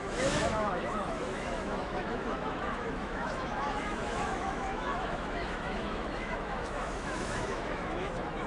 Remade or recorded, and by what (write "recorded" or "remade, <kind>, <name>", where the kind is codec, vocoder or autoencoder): remade, autoencoder, DAC-VAE